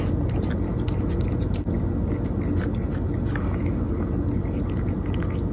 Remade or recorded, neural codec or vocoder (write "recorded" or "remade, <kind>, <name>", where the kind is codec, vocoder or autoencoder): recorded